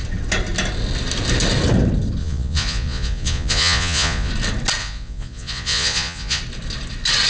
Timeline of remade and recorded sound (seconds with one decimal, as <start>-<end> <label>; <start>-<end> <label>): 0.0-2.2 recorded; 2.2-4.3 remade; 4.3-4.8 recorded; 4.8-6.4 remade; 6.4-7.3 recorded